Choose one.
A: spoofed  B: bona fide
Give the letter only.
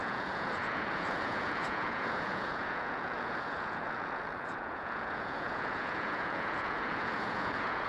A